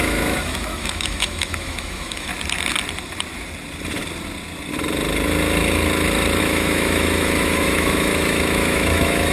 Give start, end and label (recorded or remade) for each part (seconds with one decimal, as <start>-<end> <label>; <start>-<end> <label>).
0.0-2.3 remade; 2.3-6.4 recorded; 6.4-9.3 remade